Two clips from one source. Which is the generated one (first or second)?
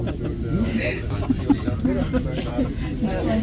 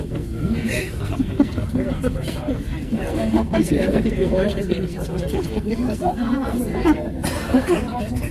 second